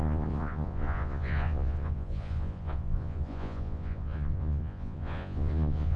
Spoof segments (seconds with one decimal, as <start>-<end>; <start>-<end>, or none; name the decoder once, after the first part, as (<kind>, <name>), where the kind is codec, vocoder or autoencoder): 0.0-6.0 (vocoder, Vocos)